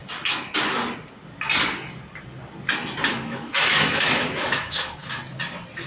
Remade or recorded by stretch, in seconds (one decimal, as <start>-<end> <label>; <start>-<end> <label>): 0.0-3.1 recorded; 3.1-5.2 remade; 5.2-5.9 recorded